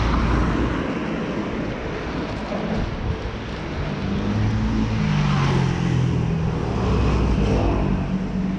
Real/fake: real